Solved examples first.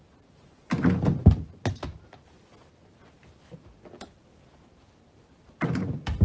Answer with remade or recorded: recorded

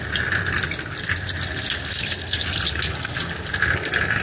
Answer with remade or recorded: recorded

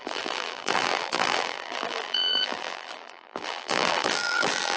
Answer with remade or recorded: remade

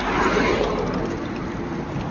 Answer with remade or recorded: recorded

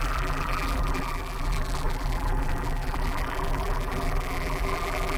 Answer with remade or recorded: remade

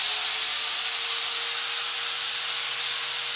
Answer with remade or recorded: recorded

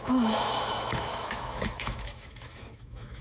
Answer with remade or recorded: remade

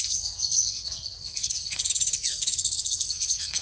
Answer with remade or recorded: remade